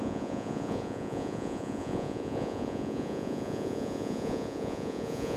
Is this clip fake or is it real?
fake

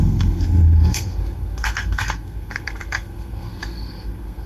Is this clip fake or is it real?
fake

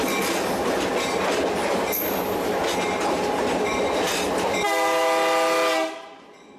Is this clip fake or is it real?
real